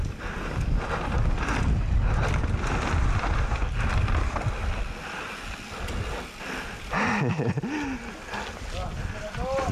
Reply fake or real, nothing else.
real